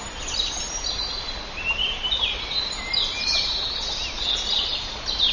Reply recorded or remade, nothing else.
recorded